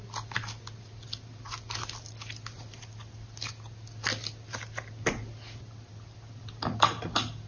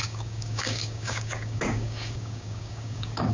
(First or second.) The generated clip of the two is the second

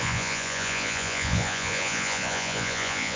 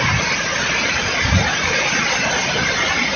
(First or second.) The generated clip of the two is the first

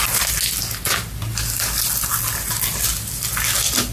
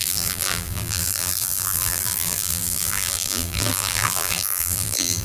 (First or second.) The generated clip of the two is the second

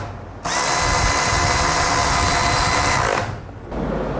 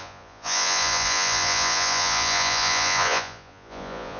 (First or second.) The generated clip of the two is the second